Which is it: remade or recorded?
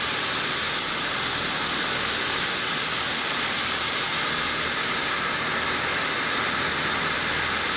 remade